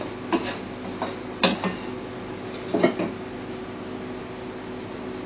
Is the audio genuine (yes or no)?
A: yes